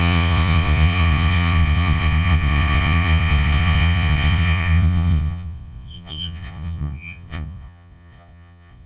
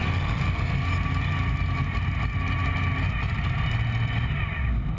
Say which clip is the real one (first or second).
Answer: second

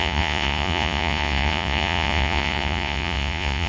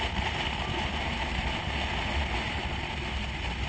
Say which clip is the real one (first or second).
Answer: second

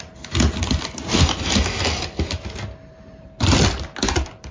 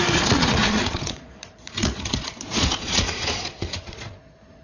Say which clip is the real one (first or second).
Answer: first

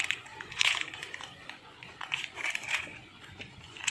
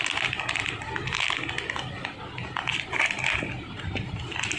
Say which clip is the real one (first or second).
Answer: second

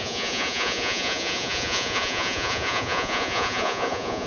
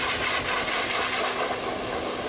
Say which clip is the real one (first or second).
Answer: second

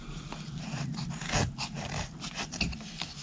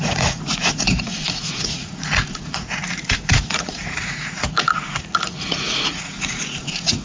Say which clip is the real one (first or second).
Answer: first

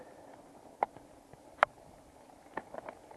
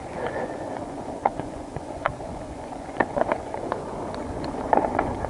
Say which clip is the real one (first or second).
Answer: first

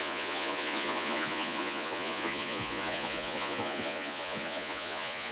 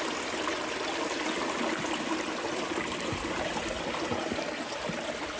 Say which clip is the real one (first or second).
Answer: second